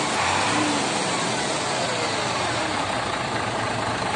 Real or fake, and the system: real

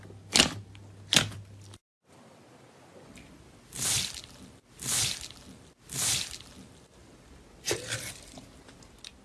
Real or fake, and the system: real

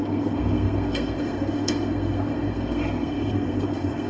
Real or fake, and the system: fake, codec, SNAC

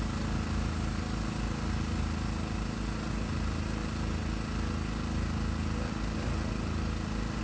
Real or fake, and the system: real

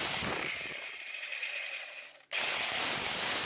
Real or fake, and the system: fake, vocoder, BigVGAN v2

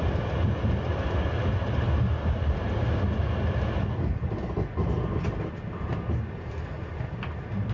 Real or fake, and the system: real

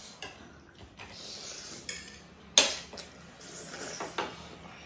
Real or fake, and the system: real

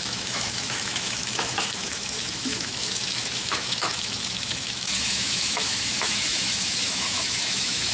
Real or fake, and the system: fake, autoencoder, DAC-VAE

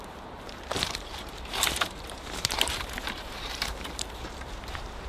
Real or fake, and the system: fake, vocoder, BigVGAN v2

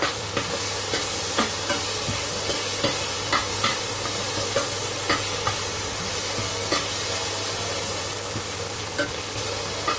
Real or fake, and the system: real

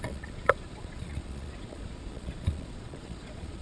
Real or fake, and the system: fake, vocoder, Vocos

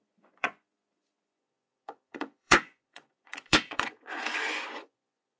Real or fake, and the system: fake, vocoder, Vocos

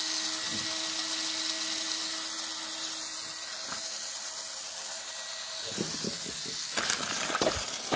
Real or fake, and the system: real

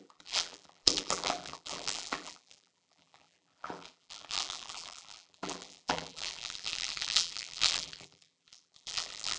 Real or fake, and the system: fake, vocoder, BigVGAN v2